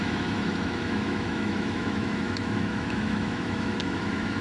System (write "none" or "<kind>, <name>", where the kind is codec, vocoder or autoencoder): autoencoder, DAC-VAE